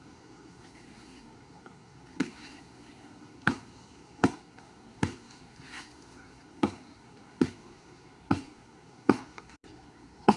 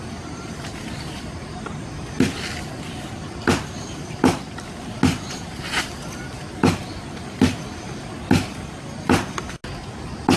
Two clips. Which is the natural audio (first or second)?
second